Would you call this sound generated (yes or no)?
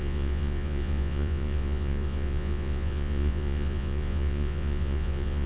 yes